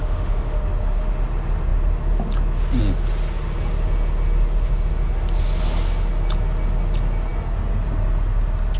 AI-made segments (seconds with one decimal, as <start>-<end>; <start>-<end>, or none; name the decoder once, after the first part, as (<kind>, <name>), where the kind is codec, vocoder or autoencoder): 0.0-0.6 (autoencoder, DAC-VAE)